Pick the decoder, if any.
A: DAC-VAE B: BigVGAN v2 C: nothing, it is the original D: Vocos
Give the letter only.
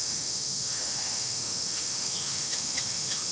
A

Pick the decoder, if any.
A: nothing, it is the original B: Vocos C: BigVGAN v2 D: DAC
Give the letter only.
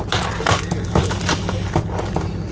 C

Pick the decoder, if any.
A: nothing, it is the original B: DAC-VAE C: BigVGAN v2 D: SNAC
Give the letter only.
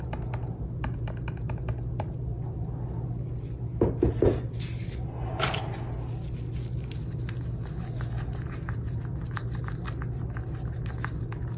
A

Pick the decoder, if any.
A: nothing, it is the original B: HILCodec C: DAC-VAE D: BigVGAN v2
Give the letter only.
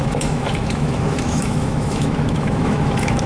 C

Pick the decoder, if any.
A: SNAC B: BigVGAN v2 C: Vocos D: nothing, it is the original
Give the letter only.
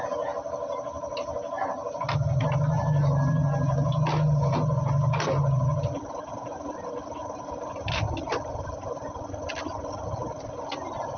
D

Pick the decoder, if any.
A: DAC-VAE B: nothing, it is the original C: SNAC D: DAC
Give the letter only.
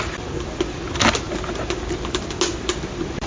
B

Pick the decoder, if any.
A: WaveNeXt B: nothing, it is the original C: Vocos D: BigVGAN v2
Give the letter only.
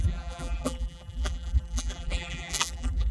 D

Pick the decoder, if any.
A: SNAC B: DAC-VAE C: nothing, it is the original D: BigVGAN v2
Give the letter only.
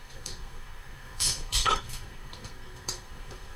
A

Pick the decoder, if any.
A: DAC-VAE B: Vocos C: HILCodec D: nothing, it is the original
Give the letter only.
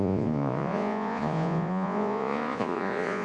B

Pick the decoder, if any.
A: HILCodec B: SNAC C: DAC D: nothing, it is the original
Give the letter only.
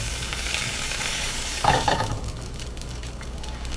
C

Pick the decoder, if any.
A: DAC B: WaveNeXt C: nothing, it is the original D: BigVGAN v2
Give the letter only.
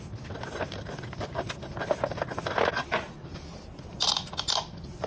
C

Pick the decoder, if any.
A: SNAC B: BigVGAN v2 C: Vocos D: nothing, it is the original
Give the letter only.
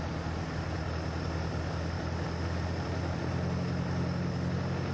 D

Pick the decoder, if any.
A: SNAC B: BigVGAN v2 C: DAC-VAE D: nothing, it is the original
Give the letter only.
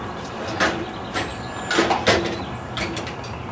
D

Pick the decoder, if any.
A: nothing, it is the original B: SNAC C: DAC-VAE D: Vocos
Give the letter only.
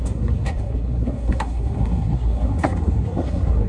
B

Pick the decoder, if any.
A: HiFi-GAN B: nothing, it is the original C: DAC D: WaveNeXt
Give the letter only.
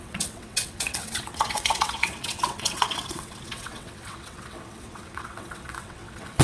D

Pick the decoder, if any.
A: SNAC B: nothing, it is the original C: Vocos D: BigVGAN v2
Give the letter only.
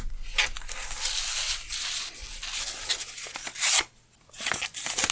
B